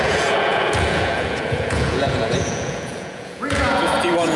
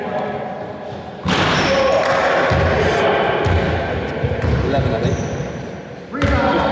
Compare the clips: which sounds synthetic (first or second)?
first